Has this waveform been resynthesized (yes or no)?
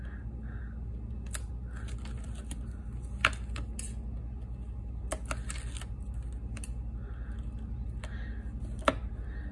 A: no